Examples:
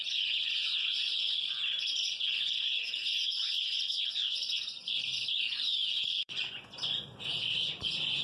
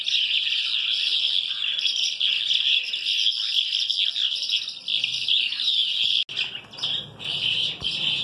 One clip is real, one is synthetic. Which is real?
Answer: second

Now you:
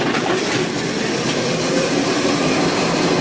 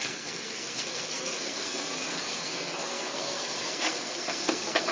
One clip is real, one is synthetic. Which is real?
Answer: first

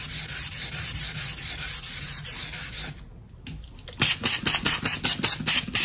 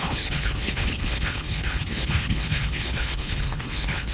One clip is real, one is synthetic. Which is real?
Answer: first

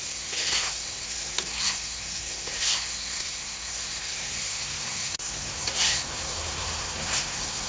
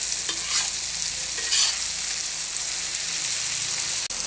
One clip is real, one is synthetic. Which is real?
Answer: second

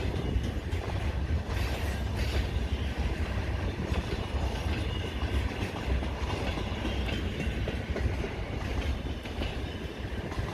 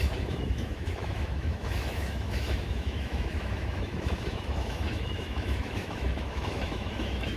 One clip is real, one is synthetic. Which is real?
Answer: first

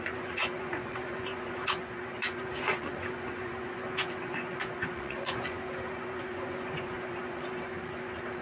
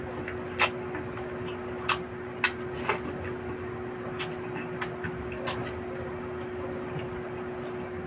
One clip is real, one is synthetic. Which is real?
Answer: second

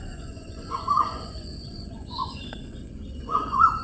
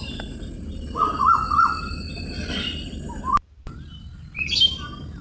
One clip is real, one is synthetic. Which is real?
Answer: second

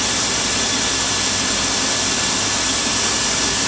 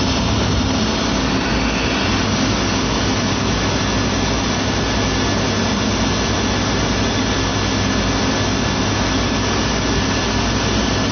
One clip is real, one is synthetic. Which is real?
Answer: second